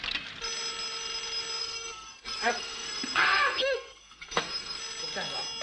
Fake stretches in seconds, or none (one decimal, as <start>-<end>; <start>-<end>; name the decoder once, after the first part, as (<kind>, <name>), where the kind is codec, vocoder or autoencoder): 1.6-4.8 (codec, SNAC)